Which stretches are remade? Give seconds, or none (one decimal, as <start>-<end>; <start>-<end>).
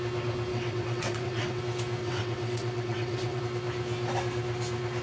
0.5-1.6; 2.0-3.4